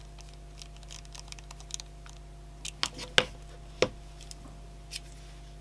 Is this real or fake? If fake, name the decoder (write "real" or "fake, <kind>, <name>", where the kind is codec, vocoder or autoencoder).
real